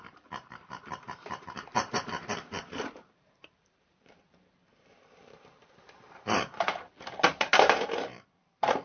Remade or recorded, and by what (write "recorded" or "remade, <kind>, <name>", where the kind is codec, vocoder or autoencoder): remade, vocoder, BigVGAN v2